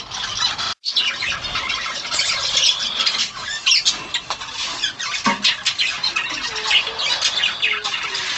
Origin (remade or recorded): recorded